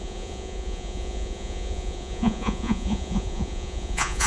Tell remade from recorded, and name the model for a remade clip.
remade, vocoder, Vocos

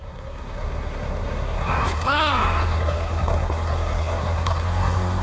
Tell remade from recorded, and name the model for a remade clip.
remade, codec, SNAC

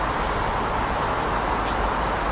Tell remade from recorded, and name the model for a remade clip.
recorded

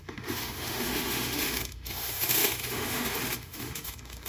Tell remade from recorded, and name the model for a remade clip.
remade, autoencoder, DAC-VAE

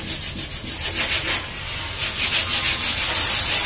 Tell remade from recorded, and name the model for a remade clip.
recorded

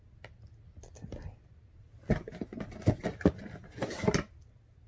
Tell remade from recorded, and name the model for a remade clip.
recorded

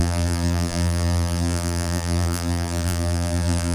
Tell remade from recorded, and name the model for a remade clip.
remade, vocoder, BigVGAN v2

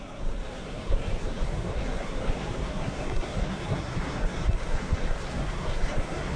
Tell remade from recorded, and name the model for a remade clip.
remade, codec, SNAC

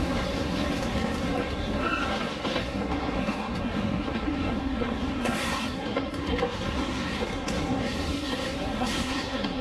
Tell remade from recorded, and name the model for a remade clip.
remade, codec, SNAC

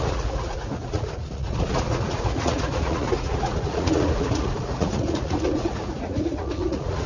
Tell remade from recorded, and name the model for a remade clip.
remade, vocoder, Vocos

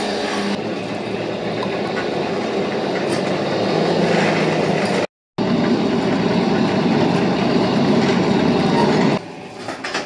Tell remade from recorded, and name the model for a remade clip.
recorded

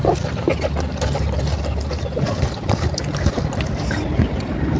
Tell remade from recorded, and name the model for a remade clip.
recorded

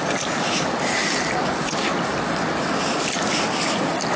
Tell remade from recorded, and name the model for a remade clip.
recorded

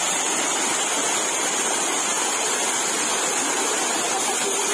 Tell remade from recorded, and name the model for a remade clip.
recorded